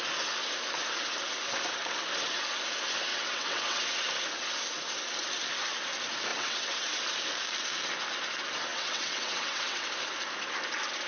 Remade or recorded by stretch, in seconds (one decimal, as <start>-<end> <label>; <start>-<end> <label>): 0.0-3.1 recorded; 3.1-3.8 remade; 3.8-6.3 recorded; 6.3-6.9 remade; 6.9-8.7 recorded; 8.7-9.9 remade; 9.9-11.1 recorded